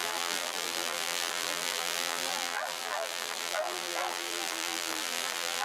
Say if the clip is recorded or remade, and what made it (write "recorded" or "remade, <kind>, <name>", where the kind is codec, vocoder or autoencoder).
remade, vocoder, BigVGAN v2